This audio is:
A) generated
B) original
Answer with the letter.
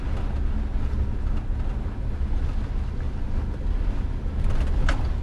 B